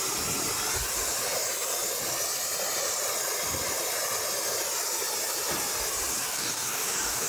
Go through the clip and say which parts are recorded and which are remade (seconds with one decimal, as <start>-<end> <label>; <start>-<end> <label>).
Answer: 0.0-6.3 recorded; 6.3-7.3 remade